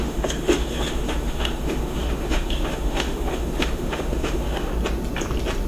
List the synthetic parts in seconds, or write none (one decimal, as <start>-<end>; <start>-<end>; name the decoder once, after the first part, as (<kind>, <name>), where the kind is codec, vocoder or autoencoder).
0.0-4.7 (autoencoder, DAC-VAE)